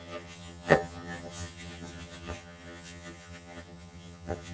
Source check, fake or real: fake